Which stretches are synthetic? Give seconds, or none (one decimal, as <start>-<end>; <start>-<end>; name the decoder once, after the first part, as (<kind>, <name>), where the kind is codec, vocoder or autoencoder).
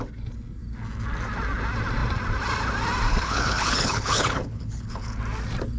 3.1-5.2 (codec, HILCodec)